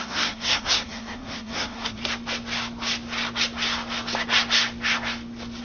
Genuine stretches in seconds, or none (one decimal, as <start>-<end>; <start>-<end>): 2.0-5.6